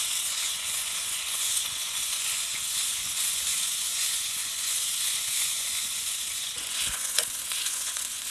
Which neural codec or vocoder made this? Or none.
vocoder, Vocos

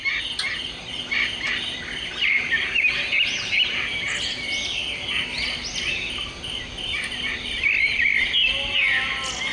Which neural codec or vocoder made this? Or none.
none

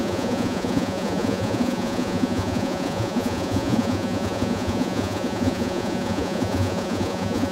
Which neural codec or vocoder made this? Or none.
vocoder, Vocos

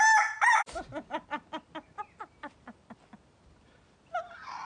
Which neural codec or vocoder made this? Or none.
none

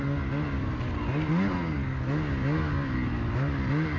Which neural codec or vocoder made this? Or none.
none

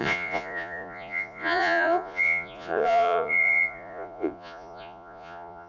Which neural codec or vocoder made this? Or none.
vocoder, Vocos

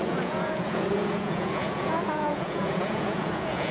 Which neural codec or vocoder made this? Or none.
vocoder, Vocos